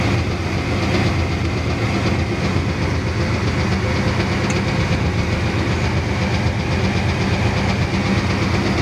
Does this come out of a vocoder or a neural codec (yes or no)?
no